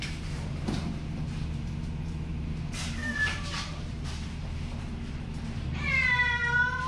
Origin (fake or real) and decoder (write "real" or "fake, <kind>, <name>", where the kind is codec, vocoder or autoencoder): fake, vocoder, BigVGAN v2